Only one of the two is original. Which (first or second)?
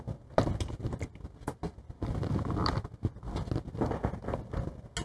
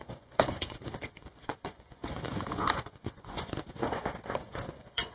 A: first